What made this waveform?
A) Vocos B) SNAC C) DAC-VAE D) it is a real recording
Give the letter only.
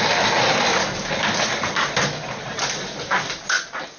D